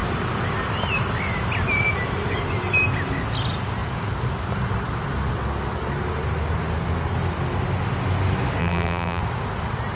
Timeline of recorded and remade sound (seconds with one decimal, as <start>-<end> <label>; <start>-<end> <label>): 0.0-8.6 recorded; 8.6-9.2 remade; 9.2-10.0 recorded